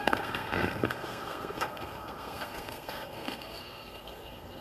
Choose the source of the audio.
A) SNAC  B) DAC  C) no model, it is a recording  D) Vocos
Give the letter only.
A